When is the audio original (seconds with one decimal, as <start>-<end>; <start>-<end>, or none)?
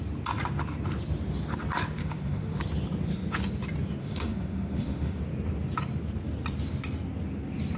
0.0-2.0; 2.6-4.0; 5.2-7.8